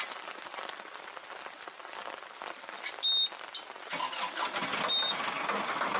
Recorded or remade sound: recorded